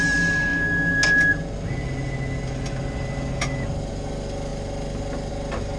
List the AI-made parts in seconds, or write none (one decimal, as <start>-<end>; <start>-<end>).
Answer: none